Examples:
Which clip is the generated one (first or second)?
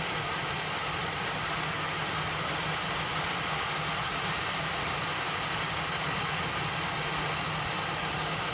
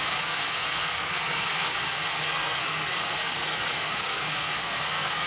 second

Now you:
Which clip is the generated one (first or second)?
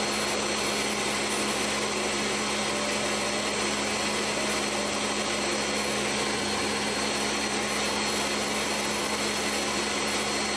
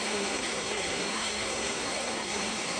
second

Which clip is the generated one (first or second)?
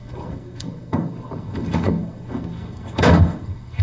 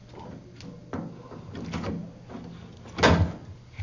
first